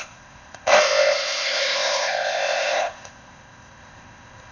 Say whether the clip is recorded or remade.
remade